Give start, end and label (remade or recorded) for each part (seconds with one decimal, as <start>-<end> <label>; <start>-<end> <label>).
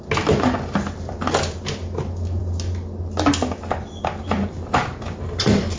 0.0-5.8 recorded